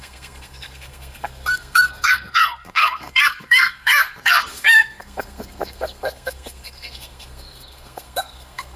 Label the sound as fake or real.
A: fake